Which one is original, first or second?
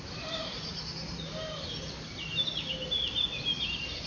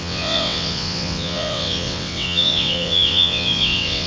first